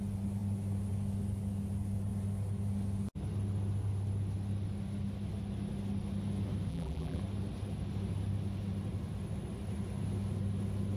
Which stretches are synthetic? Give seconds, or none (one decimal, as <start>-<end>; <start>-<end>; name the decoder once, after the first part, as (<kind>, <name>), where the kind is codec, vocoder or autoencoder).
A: 6.7-7.2 (vocoder, BigVGAN v2)